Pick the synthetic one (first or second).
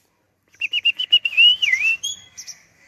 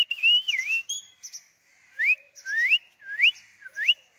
first